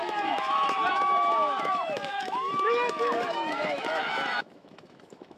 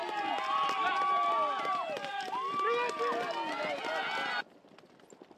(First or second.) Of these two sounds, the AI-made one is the first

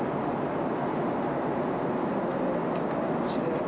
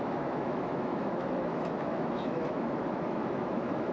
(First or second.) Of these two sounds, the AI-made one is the second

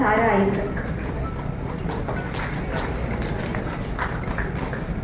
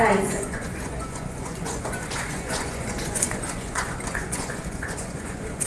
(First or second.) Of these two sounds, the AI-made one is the second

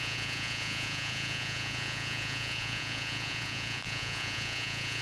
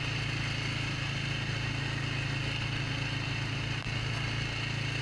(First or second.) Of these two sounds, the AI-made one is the first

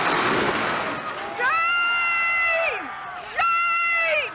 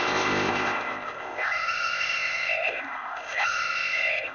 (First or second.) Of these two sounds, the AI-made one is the second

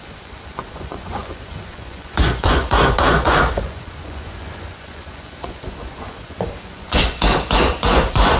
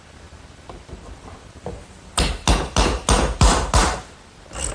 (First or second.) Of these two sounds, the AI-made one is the first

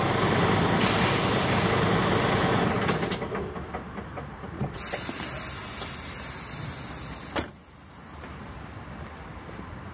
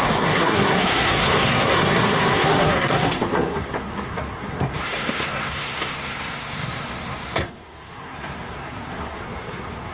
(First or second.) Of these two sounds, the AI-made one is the second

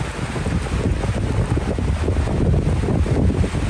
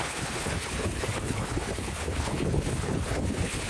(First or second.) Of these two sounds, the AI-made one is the second